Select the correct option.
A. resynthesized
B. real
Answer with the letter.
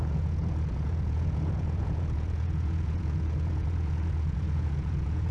A